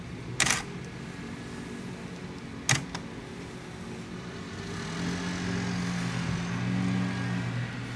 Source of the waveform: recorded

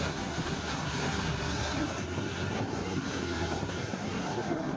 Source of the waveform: remade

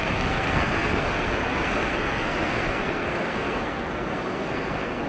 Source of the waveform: remade